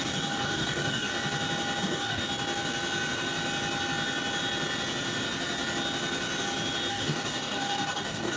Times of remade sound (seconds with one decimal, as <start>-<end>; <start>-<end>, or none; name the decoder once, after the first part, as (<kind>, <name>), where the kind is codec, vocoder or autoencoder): 0.0-1.1 (codec, DAC); 1.8-2.2; 6.9-8.4